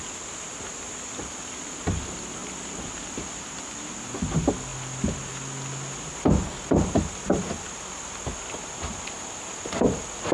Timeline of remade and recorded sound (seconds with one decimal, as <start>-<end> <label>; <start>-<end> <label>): 0.0-10.3 recorded